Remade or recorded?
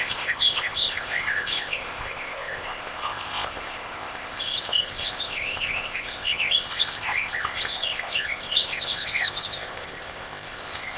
remade